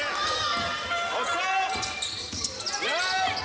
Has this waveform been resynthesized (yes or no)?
no